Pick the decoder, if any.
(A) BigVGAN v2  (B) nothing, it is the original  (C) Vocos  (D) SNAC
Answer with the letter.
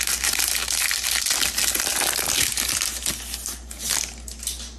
B